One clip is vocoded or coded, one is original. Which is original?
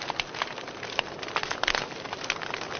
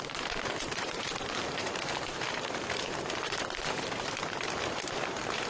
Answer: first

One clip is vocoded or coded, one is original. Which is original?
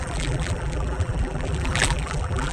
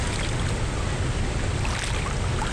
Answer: second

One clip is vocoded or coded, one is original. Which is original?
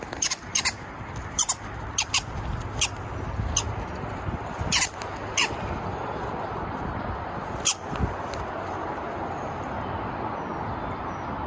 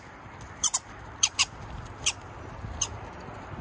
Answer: first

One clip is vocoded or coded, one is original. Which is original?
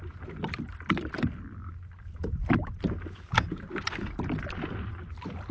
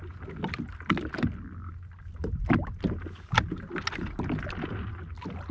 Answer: second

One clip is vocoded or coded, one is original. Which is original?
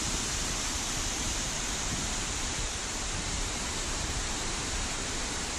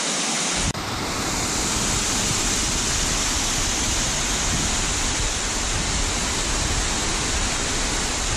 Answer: second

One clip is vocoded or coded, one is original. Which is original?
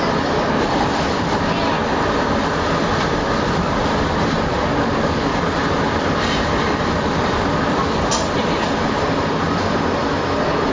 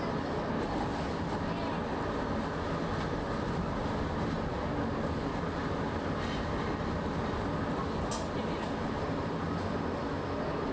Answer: second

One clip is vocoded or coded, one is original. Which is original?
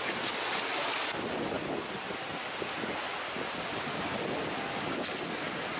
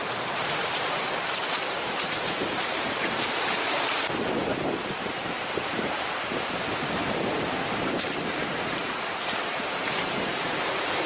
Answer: first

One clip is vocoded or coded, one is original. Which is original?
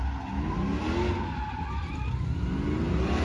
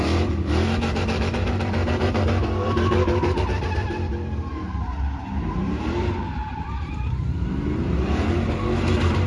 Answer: first